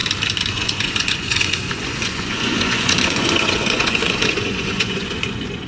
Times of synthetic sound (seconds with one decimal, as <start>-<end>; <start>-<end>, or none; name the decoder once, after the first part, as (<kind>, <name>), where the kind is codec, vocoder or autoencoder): 0.5-5.7 (vocoder, Vocos)